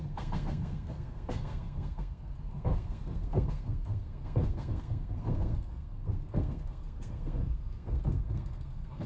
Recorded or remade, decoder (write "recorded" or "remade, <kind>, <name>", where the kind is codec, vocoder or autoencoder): remade, codec, SNAC